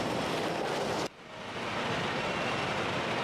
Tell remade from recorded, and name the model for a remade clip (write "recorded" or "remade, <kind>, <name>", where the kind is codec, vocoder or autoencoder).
recorded